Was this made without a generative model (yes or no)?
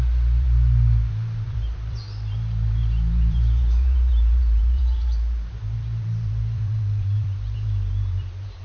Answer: no